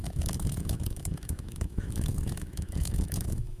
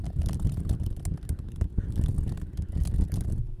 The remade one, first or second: first